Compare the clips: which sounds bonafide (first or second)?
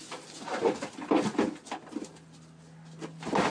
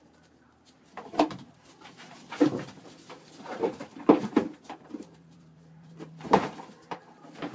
first